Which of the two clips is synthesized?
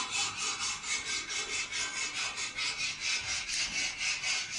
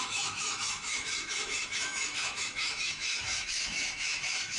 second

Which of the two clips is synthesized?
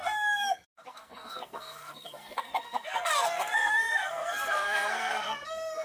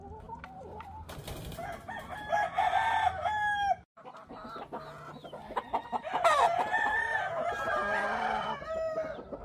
first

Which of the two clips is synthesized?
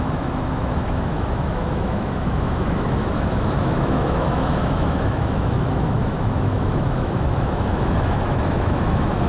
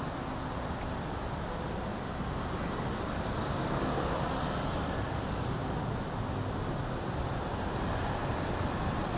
first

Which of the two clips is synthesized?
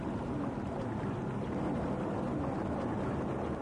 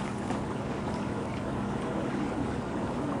second